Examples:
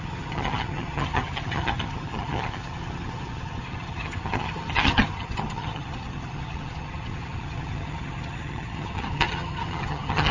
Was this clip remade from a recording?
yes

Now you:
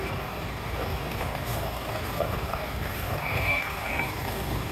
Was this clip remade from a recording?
yes